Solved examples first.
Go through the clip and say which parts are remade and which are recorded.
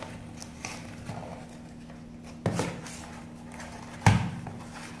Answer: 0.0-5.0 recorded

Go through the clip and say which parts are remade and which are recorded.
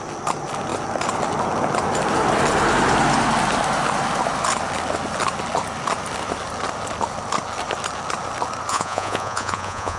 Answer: 0.0-8.7 recorded; 8.7-10.0 remade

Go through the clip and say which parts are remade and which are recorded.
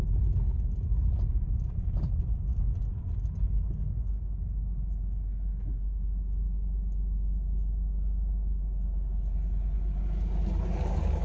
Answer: 0.0-1.0 recorded; 1.0-2.9 remade; 2.9-11.2 recorded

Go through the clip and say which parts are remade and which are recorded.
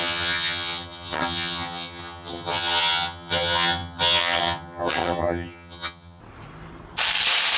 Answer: 0.0-6.2 remade; 6.2-7.6 recorded